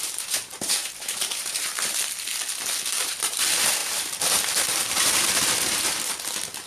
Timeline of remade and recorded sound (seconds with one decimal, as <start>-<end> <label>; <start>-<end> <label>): 0.0-2.3 remade; 2.3-2.9 recorded; 2.9-6.7 remade